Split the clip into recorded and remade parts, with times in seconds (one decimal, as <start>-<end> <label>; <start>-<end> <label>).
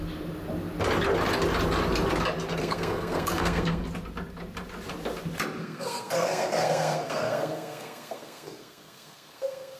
0.0-2.6 recorded; 2.6-3.8 remade; 3.8-5.6 recorded; 5.6-9.8 remade